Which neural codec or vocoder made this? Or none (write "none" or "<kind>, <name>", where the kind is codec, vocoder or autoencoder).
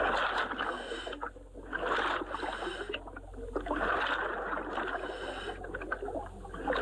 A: none